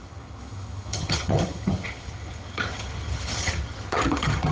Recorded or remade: remade